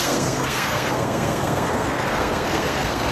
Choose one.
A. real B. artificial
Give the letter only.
B